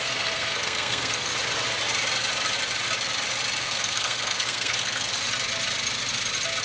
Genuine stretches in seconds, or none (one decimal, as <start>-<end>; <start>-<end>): 1.3-3.6; 5.1-6.6